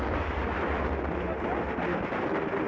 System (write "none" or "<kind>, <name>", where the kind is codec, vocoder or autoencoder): none